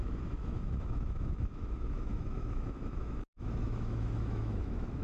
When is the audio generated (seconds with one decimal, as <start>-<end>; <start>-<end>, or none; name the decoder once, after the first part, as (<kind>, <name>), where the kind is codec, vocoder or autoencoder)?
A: 0.0-5.0 (autoencoder, DAC-VAE)